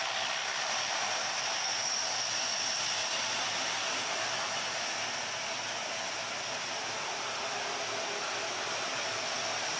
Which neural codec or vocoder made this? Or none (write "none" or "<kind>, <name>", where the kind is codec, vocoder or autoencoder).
none